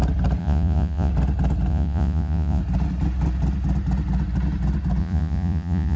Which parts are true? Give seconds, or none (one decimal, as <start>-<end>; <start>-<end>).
0.0-0.4; 1.1-1.7; 2.6-5.0